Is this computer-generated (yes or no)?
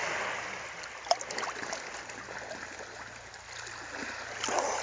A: no